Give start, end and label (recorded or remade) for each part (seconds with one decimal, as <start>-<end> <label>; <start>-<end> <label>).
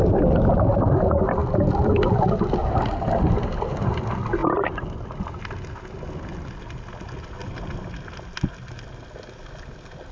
0.0-10.1 recorded